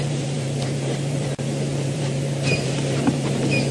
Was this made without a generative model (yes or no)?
no